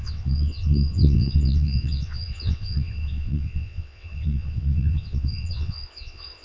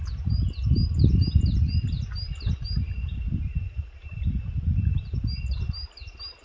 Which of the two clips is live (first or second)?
second